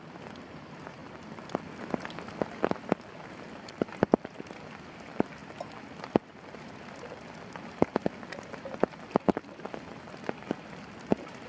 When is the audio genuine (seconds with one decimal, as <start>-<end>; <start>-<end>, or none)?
0.0-1.0; 2.3-11.5